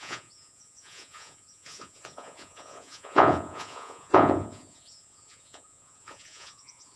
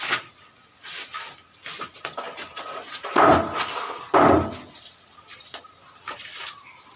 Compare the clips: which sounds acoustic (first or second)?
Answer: second